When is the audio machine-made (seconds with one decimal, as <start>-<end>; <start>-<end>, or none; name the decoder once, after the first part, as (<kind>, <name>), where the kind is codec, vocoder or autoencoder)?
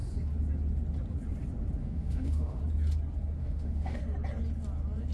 1.8-2.6 (autoencoder, DAC-VAE); 3.4-4.0